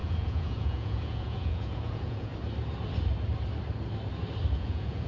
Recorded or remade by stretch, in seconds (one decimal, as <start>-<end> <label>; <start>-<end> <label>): 0.0-2.3 remade; 2.3-4.5 recorded; 4.5-5.1 remade

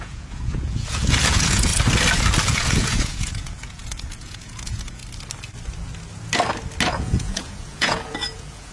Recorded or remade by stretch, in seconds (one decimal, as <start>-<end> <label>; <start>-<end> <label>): 0.0-1.7 remade; 1.7-2.4 recorded; 2.4-5.0 remade; 5.0-6.9 recorded; 6.9-8.7 remade